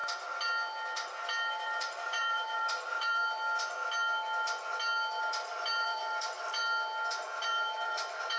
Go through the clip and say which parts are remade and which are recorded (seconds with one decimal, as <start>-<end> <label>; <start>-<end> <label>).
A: 0.0-1.5 recorded; 1.5-3.2 remade; 3.2-5.2 recorded; 5.2-6.6 remade; 6.6-7.4 recorded; 7.4-8.4 remade